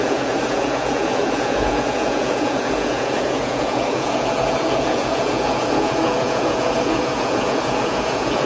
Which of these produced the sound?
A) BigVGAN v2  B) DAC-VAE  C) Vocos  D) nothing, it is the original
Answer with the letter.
C